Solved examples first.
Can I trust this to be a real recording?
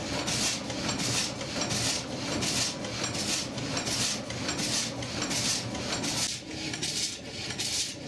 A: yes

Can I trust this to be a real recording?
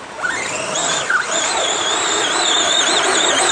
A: no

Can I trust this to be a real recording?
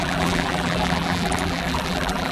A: no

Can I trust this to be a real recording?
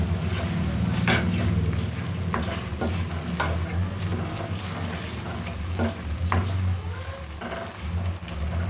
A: yes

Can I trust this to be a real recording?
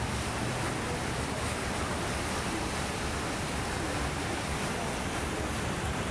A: no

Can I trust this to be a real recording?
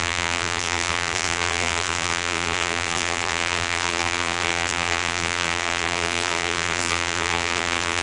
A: no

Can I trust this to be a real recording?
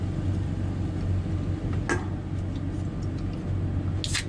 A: yes